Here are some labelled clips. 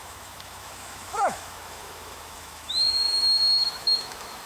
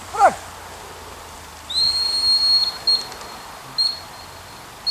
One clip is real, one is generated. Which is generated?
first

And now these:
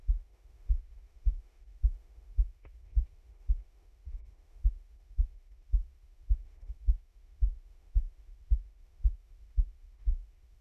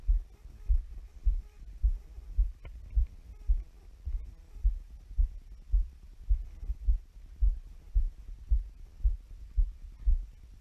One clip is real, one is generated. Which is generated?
first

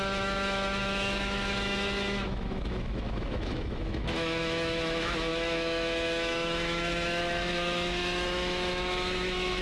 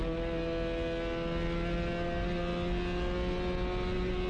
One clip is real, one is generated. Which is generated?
first